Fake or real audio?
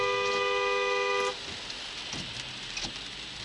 real